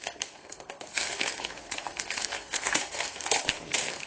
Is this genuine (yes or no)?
no